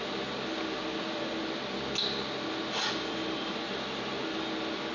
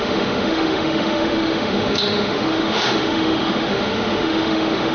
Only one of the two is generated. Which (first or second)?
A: second